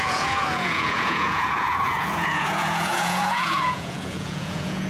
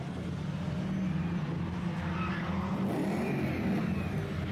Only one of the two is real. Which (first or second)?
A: second